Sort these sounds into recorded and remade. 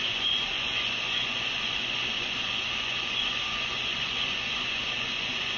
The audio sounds remade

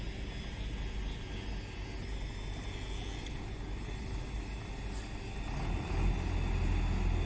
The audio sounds recorded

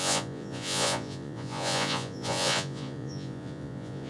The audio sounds remade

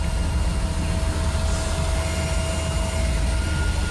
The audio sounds recorded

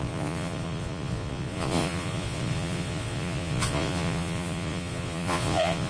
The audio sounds remade